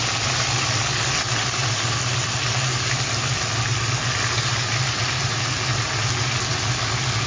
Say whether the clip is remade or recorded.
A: recorded